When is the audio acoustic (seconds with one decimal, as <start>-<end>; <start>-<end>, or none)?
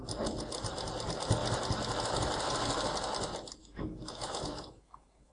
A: 0.0-3.6